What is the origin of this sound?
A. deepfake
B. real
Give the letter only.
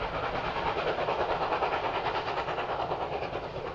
B